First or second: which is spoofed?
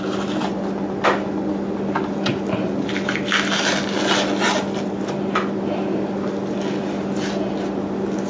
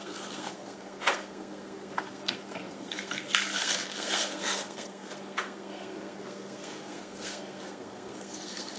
second